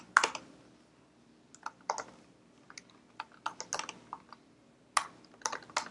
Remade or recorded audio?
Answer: recorded